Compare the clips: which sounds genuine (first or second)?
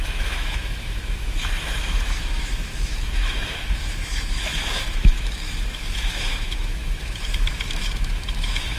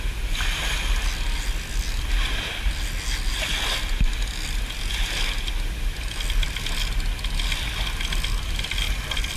second